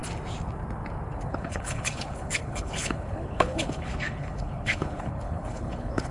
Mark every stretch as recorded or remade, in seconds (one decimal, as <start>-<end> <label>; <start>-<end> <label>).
0.0-1.3 recorded; 1.3-6.1 remade